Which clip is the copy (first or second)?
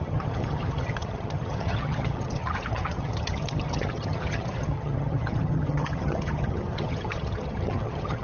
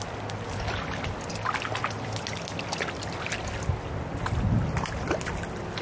first